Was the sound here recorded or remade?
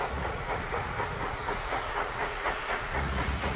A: remade